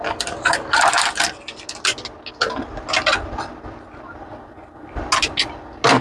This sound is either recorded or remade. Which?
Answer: recorded